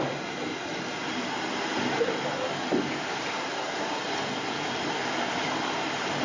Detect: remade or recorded remade